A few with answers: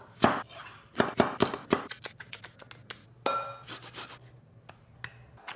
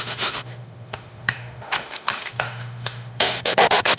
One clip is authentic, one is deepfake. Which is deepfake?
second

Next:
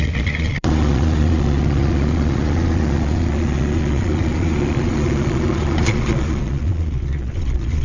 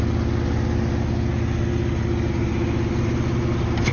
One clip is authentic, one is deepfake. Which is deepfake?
first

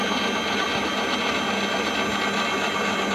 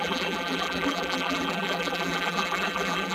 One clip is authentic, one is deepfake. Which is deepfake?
second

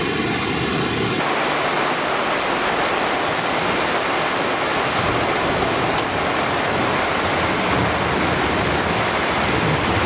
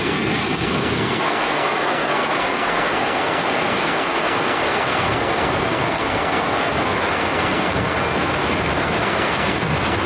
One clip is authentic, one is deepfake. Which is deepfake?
second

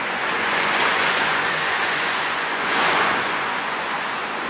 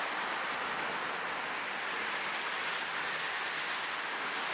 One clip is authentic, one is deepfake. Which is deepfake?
first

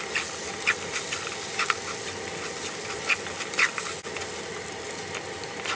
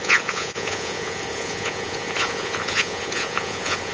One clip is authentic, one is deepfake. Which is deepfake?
second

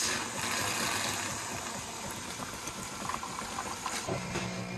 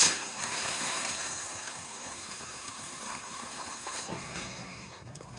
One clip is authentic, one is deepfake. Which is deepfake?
second